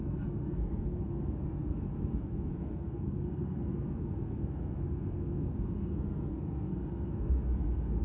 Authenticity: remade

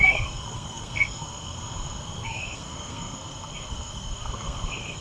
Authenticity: remade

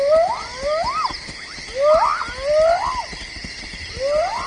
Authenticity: recorded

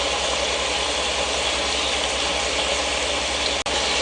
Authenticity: recorded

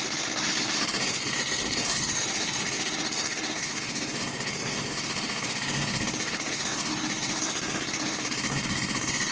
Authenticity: remade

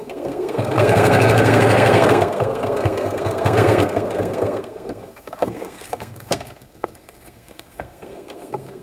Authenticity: remade